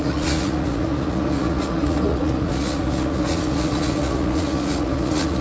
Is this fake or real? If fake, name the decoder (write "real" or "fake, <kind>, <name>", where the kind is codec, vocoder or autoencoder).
fake, vocoder, Vocos